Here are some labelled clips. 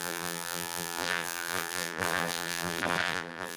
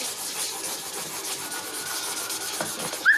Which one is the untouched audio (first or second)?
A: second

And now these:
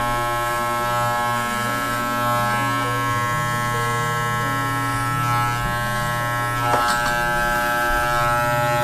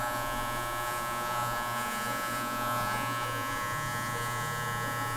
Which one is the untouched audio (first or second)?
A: first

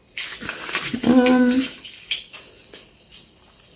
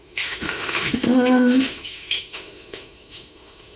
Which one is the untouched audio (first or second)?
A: first